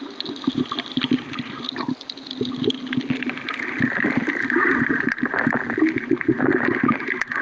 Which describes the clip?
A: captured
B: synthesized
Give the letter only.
A